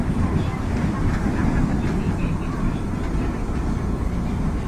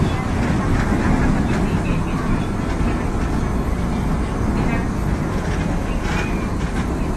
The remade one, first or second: first